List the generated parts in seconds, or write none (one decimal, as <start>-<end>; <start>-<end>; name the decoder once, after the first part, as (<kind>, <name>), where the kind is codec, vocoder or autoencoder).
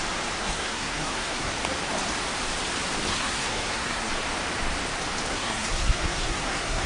0.4-1.5 (codec, SNAC); 3.1-4.1; 5.3-6.9